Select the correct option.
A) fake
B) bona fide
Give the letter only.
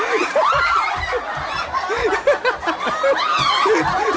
B